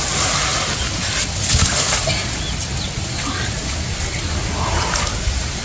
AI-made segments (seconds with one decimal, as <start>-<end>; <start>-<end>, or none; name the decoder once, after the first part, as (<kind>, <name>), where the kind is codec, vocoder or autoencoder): none